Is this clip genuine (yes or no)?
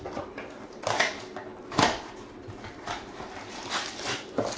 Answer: no